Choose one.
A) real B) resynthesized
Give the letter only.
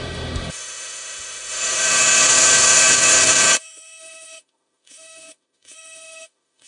B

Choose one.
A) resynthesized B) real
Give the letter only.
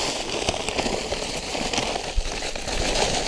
B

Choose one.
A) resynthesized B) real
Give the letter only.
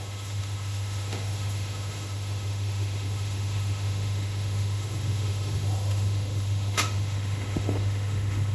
A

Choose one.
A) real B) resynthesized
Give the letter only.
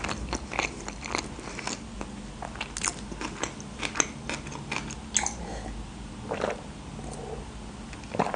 A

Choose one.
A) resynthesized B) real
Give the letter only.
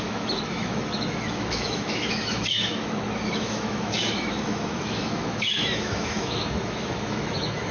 A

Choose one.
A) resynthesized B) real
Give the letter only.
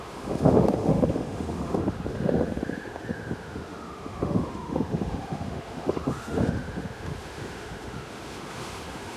A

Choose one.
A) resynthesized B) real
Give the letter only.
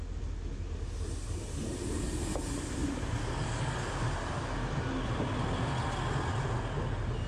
B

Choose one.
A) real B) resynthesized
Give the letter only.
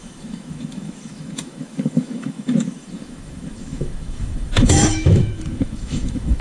B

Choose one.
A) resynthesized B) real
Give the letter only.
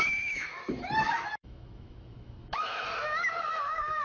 A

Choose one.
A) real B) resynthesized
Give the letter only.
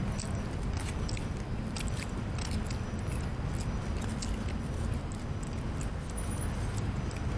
A